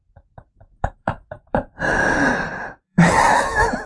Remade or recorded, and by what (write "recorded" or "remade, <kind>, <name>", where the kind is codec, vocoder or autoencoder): remade, vocoder, BigVGAN v2